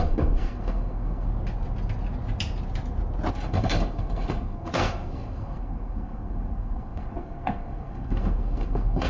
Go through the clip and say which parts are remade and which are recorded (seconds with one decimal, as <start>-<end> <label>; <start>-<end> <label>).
0.0-1.3 remade; 1.3-3.3 recorded; 3.3-9.1 remade